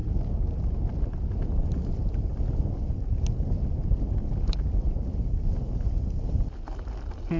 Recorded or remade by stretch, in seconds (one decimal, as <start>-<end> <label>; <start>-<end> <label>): 0.0-7.4 recorded

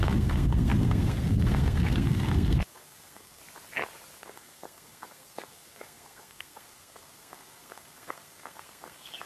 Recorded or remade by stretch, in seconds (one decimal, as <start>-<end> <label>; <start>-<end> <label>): 0.0-3.4 remade; 3.4-4.2 recorded; 4.2-9.3 remade

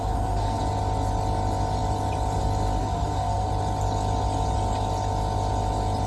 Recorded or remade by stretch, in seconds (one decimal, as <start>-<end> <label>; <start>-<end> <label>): 0.0-0.6 remade; 0.6-2.8 recorded; 2.8-3.5 remade; 3.5-6.1 recorded

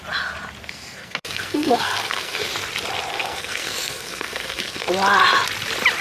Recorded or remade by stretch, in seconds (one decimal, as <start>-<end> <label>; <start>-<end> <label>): 0.0-0.6 recorded; 0.6-2.5 remade; 2.5-3.1 recorded; 3.1-4.9 remade; 4.9-6.0 recorded

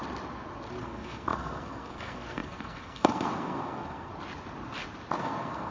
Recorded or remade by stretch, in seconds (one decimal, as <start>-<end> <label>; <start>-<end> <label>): 0.0-0.8 recorded; 0.8-4.1 remade; 4.1-5.2 recorded; 5.2-5.7 remade

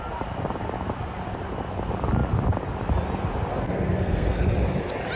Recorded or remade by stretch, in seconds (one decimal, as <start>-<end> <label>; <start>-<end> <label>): 0.0-3.5 recorded; 3.5-4.5 remade; 4.5-5.2 recorded

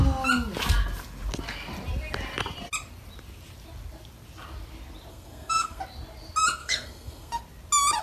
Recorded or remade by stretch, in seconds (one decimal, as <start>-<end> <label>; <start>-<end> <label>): 0.0-5.1 recorded; 5.1-5.8 remade; 5.8-6.6 recorded; 6.6-7.4 remade; 7.4-8.0 recorded